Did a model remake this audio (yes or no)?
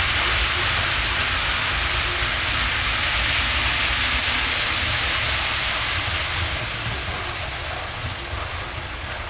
no